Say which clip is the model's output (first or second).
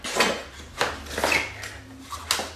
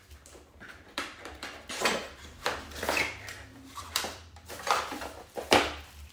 second